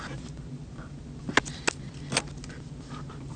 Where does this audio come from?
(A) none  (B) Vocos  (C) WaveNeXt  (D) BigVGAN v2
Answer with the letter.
A